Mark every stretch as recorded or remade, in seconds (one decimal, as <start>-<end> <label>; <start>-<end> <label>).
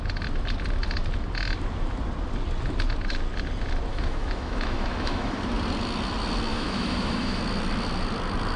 0.0-3.9 recorded; 3.9-5.4 remade; 5.4-6.5 recorded; 6.5-7.4 remade; 7.4-8.6 recorded